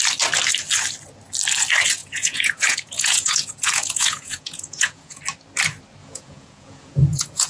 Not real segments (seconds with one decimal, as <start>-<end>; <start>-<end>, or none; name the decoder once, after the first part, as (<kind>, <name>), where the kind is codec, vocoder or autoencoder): 2.0-5.2 (vocoder, Vocos); 6.0-7.5

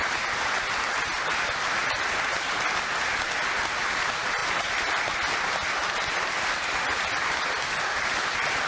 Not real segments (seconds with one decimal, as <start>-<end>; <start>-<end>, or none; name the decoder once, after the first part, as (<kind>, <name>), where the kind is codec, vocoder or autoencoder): none

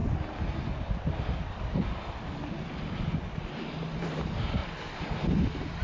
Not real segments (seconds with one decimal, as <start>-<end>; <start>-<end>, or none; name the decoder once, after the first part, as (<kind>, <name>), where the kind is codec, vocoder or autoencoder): none

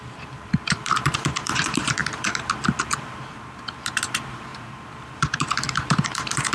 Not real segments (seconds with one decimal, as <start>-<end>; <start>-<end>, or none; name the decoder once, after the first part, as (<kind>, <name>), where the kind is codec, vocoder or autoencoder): 0.0-6.5 (vocoder, BigVGAN v2)

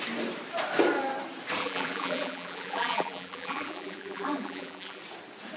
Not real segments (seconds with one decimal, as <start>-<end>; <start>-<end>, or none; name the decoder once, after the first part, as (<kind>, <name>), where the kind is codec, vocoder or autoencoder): 1.6-5.0 (vocoder, BigVGAN v2)

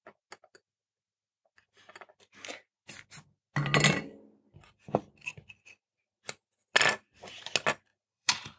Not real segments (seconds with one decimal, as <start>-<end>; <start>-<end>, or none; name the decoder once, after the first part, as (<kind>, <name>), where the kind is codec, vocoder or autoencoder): 7.9-8.6 (vocoder, BigVGAN v2)